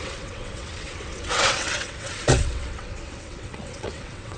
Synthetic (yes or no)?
yes